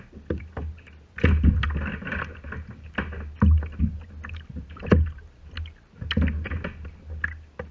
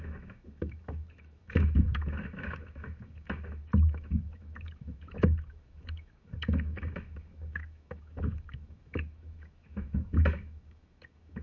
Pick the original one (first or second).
first